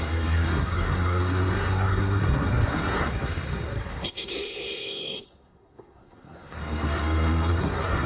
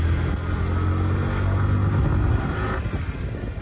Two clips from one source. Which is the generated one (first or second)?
first